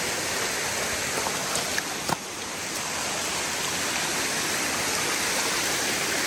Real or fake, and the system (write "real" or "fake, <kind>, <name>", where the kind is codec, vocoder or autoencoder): real